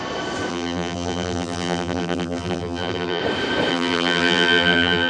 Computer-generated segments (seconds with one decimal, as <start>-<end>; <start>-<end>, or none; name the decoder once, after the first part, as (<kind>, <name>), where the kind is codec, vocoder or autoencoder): 0.5-3.2 (vocoder, BigVGAN v2); 3.7-5.1